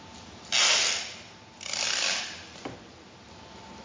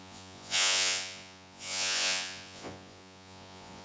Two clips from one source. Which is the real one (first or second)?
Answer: first